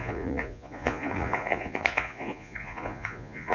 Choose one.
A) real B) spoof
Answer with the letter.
B